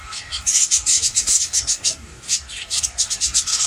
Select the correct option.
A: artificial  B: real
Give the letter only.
A